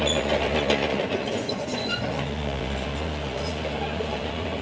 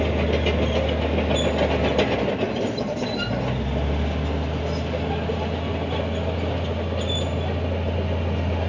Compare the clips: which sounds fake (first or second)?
first